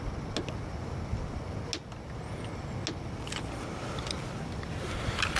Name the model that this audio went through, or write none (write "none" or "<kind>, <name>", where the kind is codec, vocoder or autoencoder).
none